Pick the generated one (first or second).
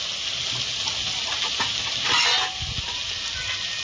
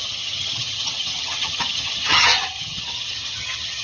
second